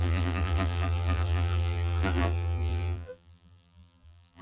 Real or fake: fake